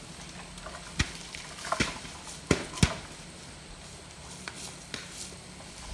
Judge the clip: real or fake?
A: real